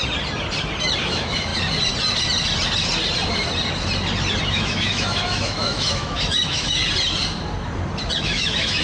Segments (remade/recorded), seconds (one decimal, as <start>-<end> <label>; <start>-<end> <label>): 0.0-1.0 recorded; 1.0-1.5 remade; 1.5-4.4 recorded; 4.4-6.8 remade; 6.8-8.2 recorded; 8.2-8.8 remade